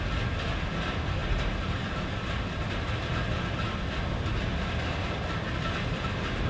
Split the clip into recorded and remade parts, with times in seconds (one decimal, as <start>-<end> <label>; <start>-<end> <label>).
0.0-1.2 recorded; 1.2-3.2 remade; 3.2-6.5 recorded